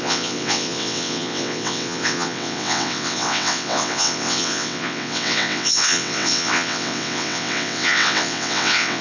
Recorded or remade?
remade